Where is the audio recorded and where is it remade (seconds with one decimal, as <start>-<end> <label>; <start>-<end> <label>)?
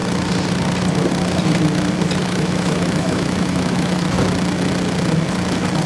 0.0-2.2 recorded; 2.2-4.0 remade; 4.0-5.9 recorded